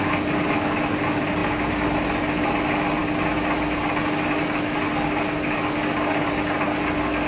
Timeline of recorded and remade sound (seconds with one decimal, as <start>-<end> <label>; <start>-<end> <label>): 0.0-7.3 recorded